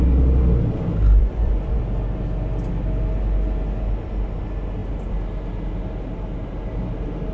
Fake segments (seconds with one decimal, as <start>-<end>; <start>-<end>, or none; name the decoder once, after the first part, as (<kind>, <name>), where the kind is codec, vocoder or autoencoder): 1.2-1.8 (vocoder, Vocos)